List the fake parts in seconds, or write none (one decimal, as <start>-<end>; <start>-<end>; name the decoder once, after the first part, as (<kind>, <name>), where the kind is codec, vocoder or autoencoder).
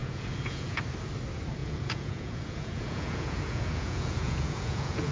0.0-0.8 (vocoder, Vocos); 1.6-5.1